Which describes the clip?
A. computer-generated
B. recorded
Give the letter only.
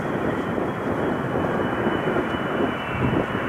B